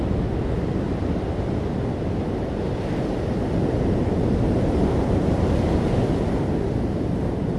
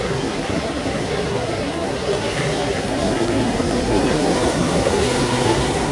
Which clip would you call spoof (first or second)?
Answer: second